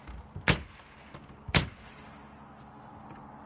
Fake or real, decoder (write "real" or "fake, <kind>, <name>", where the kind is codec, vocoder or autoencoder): real